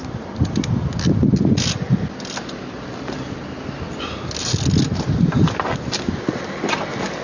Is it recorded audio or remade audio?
recorded